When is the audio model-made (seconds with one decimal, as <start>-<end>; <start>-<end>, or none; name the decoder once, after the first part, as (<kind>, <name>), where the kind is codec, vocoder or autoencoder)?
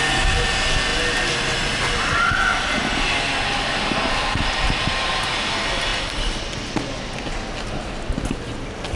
none